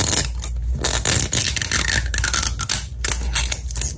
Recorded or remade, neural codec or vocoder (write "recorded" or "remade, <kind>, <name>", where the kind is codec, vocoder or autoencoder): recorded